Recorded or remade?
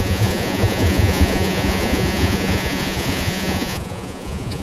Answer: remade